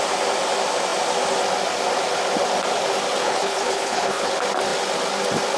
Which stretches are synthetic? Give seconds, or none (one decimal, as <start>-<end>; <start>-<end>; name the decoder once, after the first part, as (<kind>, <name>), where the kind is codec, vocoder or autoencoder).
3.2-4.3 (codec, HILCodec)